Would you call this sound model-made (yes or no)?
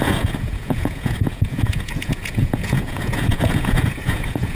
yes